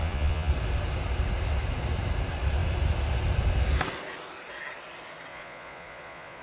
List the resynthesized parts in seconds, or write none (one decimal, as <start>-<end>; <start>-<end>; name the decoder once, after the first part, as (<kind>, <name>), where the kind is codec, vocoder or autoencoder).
0.0-0.5 (vocoder, Vocos); 5.3-6.4